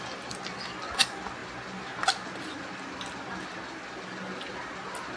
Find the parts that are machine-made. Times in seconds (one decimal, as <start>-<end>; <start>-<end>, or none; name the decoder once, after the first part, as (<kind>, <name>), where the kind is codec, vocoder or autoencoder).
none